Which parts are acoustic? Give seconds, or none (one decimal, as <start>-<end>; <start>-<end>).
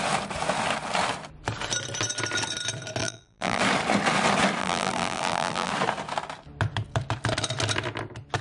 0.0-3.0; 3.6-4.6; 5.7-8.4